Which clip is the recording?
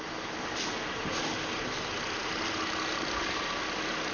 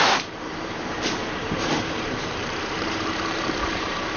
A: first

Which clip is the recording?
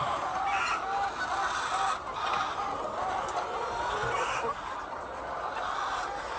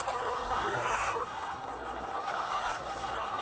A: first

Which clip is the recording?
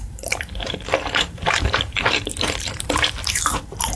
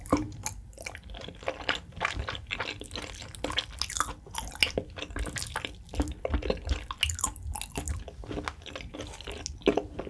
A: second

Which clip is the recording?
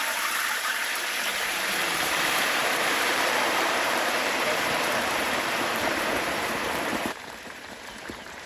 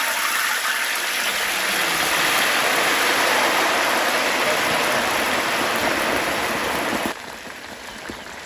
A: second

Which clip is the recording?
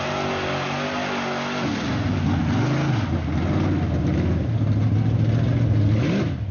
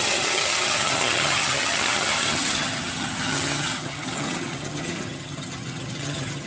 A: first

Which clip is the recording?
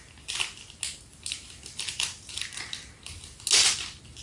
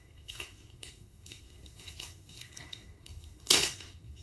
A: first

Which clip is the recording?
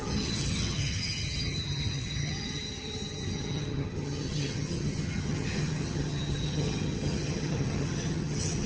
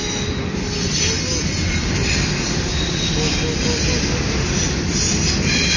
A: second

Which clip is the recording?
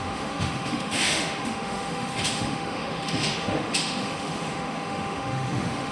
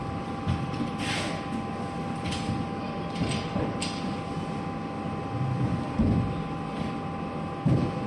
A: second